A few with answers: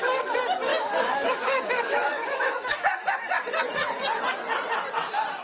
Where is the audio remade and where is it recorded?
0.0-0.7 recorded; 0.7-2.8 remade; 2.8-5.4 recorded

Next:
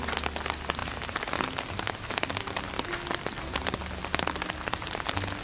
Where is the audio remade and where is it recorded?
0.0-5.4 recorded

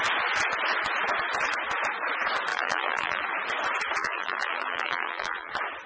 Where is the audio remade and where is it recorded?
0.0-2.5 recorded; 2.5-3.2 remade; 3.2-4.0 recorded; 4.0-5.5 remade; 5.5-5.9 recorded